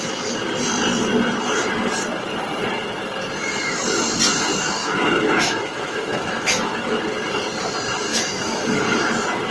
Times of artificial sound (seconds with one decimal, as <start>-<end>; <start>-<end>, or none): 4.8-7.0; 8.1-8.8